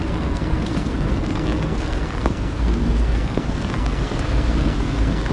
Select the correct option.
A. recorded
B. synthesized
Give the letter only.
B